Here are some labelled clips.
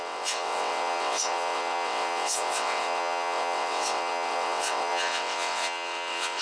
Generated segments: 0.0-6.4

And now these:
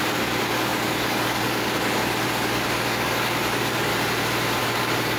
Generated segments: 0.0-3.9; 4.6-5.2